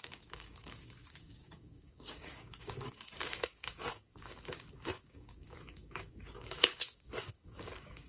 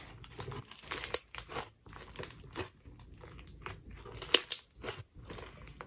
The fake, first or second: first